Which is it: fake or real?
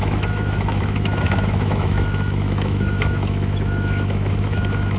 fake